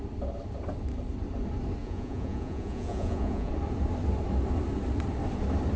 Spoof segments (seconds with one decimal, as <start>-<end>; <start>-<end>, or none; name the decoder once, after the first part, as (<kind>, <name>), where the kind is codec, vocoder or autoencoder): 1.8-3.5 (vocoder, Vocos)